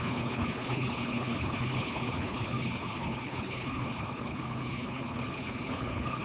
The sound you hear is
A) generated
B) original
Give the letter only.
A